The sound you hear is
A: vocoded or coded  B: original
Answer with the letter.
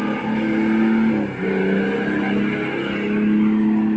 B